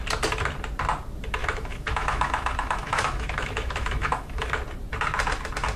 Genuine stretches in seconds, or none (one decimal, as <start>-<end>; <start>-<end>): 0.0-1.4; 4.5-5.8